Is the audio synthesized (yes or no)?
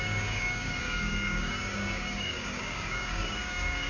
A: yes